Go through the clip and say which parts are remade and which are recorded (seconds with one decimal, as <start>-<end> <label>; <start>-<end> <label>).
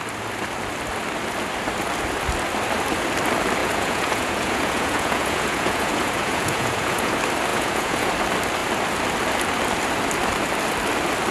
0.0-3.6 recorded; 3.6-7.1 remade; 7.1-7.5 recorded; 7.5-8.1 remade; 8.1-11.3 recorded